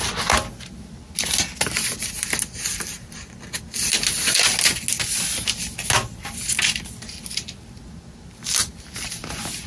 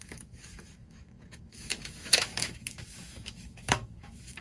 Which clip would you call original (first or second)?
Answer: first